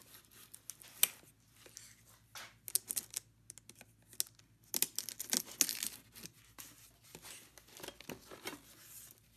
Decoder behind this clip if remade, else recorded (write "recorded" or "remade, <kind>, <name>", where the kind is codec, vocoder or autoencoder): recorded